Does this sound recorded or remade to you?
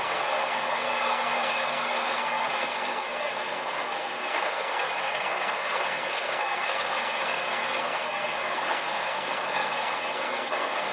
remade